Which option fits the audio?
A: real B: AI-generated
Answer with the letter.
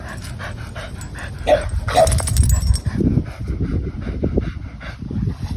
A